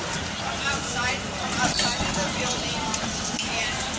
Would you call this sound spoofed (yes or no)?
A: no